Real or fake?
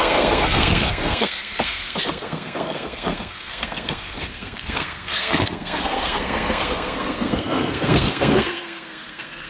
fake